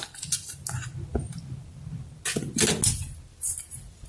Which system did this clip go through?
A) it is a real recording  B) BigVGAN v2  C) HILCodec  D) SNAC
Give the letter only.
A